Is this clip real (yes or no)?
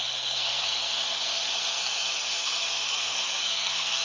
no